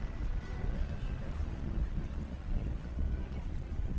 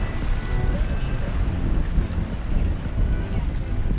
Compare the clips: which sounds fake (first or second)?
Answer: first